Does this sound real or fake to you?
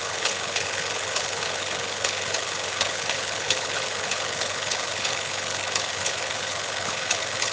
fake